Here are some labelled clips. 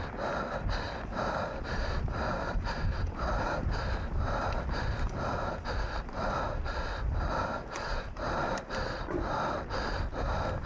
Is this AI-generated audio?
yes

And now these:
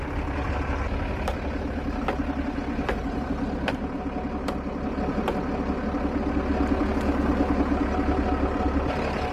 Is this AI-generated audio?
no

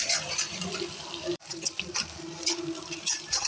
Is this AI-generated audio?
yes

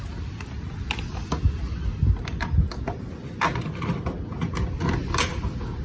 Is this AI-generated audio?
no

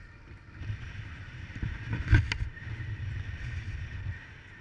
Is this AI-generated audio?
yes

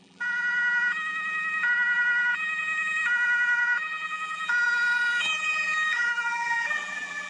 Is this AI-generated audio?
yes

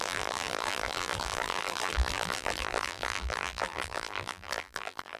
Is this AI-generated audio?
yes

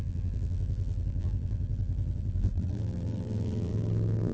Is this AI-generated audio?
yes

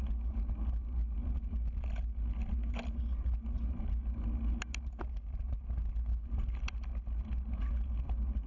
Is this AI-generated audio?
no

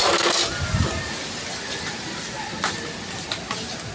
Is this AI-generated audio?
no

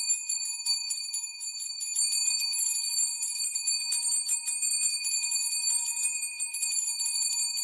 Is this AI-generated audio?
yes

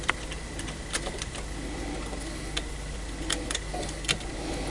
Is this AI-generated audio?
no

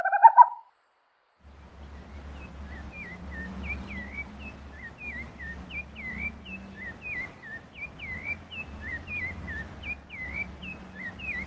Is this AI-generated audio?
no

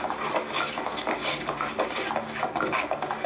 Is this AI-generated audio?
no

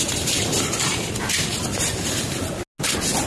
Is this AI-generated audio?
no